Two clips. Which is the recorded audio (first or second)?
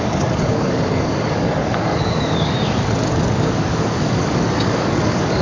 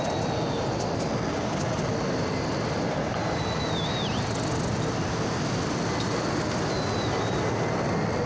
second